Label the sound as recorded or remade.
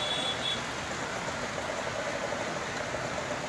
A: recorded